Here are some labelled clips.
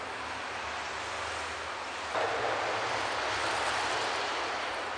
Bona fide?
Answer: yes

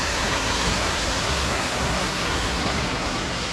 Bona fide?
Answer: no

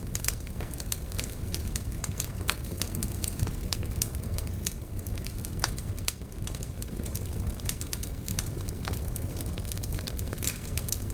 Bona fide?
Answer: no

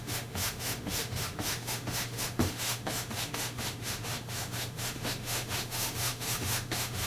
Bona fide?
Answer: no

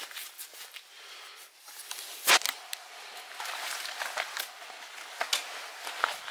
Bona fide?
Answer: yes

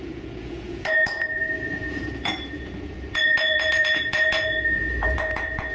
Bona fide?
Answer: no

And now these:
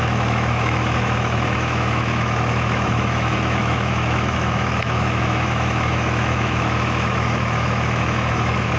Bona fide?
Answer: no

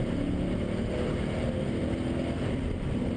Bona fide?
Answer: yes